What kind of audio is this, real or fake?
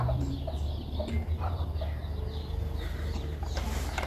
real